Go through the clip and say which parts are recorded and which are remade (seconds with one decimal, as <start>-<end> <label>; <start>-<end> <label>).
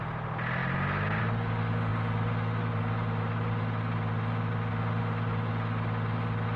0.0-6.6 recorded